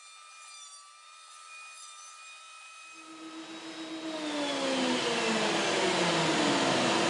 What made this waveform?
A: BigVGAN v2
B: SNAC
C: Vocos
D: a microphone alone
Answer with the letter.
D